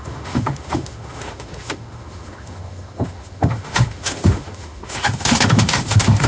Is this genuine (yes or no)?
no